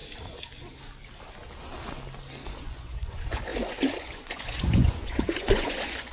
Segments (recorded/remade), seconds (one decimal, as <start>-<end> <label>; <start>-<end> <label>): 0.0-2.6 recorded; 2.6-6.1 remade